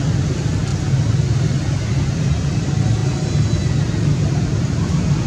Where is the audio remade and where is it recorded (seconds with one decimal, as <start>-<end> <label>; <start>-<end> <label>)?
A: 0.0-5.3 recorded